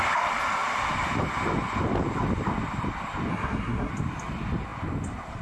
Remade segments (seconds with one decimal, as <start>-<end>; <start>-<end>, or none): 3.3-3.9